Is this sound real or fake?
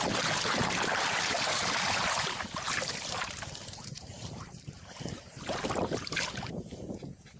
fake